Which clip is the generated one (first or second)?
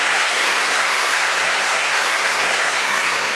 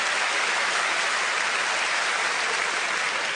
first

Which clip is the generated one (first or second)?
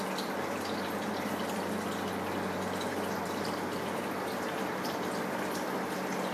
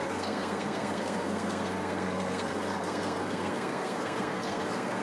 second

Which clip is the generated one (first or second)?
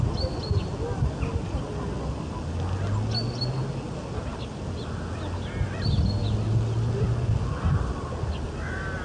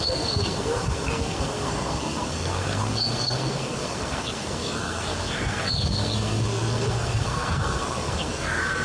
second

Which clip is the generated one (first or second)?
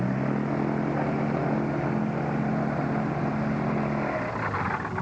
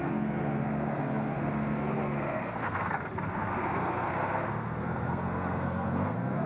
second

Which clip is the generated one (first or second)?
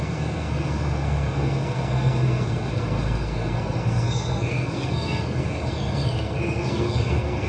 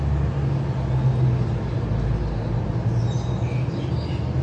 first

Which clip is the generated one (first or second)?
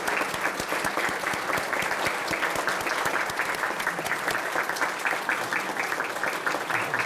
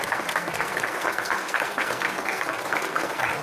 second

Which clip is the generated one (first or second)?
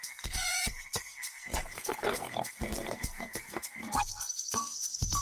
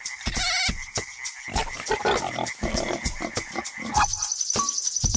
first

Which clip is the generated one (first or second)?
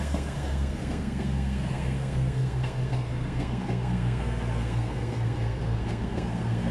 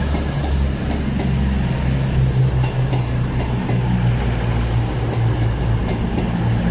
first